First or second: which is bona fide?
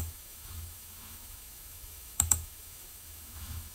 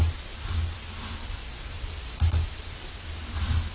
second